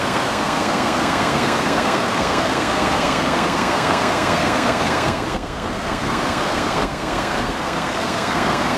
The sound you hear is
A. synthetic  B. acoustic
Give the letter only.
A